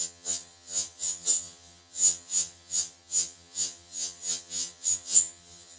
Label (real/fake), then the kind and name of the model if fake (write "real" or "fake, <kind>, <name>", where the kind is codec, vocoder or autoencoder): fake, vocoder, HiFi-GAN